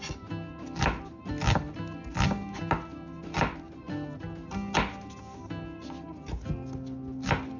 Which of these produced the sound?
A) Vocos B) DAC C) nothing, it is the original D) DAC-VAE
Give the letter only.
C